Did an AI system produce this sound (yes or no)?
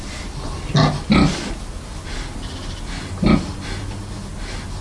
no